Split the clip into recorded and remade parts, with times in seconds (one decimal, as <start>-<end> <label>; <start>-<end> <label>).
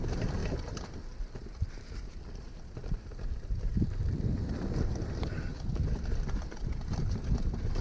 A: 0.0-0.4 remade; 0.4-0.9 recorded; 0.9-5.5 remade; 5.5-7.8 recorded